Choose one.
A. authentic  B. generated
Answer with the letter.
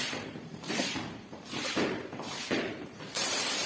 B